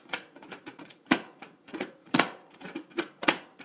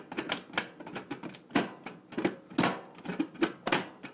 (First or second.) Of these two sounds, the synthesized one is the first